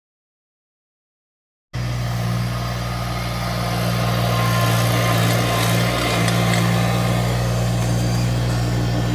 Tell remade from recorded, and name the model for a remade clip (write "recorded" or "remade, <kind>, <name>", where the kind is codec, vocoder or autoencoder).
recorded